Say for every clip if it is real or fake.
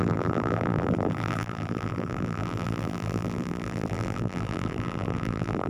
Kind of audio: fake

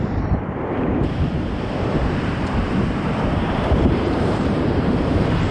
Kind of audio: fake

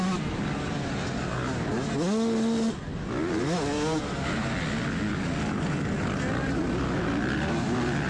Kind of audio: real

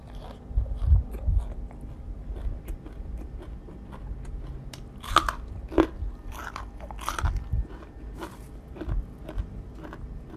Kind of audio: real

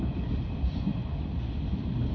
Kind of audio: real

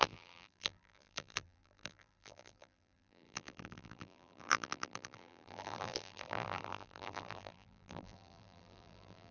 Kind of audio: fake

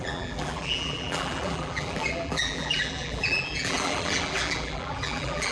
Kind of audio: fake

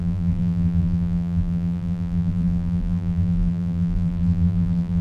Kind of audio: fake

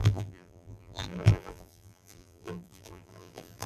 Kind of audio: fake